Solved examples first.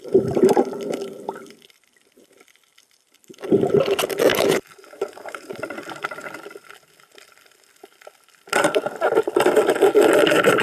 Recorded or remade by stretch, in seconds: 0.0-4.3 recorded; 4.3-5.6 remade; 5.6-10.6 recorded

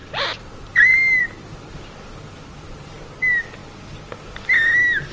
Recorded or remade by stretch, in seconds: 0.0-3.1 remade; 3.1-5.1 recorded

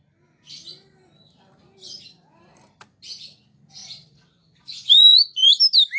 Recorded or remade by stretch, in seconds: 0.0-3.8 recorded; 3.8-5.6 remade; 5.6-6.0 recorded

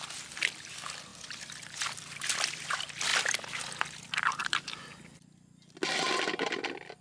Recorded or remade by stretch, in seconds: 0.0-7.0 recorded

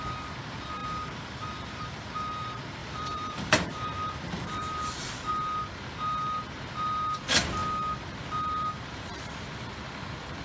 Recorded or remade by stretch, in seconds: 0.0-0.8 recorded; 0.8-2.0 remade; 2.0-2.8 recorded; 2.8-5.3 remade; 5.3-10.4 recorded

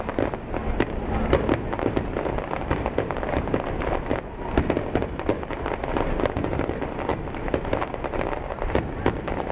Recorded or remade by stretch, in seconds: 0.0-9.5 recorded

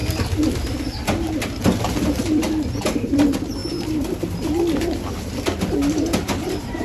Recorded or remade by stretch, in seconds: 0.0-1.8 recorded; 1.8-3.6 remade; 3.6-5.1 recorded; 5.1-6.8 remade

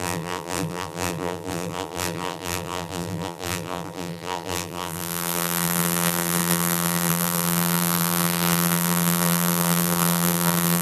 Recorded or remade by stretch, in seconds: 0.0-10.8 remade